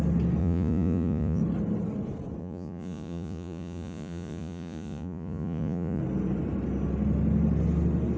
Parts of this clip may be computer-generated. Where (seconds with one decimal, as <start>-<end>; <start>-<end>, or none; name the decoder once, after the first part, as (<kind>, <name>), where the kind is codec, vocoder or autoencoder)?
0.4-1.4 (vocoder, Vocos); 2.4-6.0